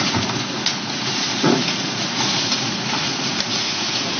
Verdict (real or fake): fake